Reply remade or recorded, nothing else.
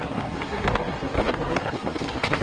remade